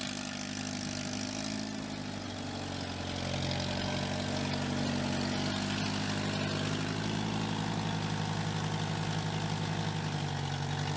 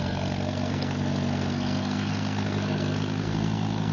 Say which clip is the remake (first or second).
second